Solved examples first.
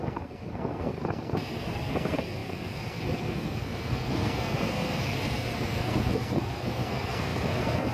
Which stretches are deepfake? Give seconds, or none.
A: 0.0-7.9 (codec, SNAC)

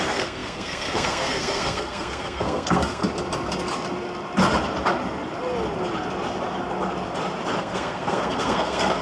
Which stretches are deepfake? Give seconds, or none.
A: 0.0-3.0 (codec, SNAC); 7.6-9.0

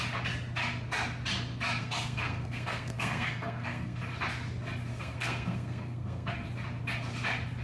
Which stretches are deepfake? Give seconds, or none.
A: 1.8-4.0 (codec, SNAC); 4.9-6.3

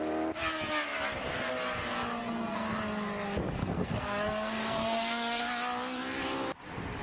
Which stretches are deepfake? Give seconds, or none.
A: 2.2-2.8 (codec, SNAC); 3.6-5.4

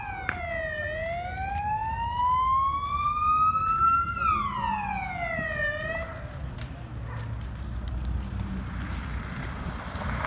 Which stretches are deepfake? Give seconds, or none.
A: none

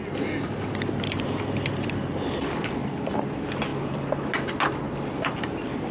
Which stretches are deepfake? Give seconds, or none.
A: none